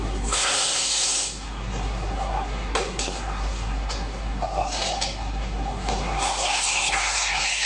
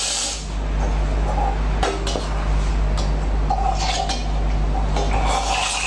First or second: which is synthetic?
first